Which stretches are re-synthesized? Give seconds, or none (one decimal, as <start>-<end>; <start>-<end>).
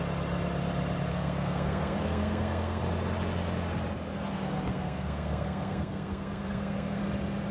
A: 1.1-2.8; 4.7-7.0